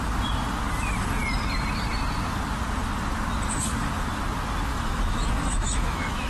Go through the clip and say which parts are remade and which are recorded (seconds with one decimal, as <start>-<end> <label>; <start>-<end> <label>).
0.0-4.7 recorded; 4.7-6.3 remade